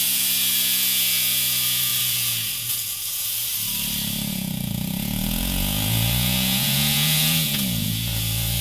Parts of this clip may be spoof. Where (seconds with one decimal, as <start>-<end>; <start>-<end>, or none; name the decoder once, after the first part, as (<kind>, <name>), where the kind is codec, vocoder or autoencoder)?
0.0-3.5 (vocoder, Vocos); 4.3-8.6